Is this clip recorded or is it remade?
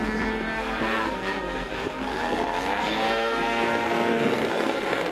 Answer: remade